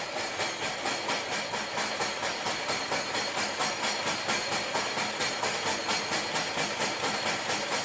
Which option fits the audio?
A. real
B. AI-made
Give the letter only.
A